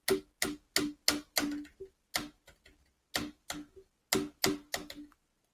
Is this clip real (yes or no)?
yes